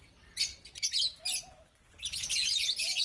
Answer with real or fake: real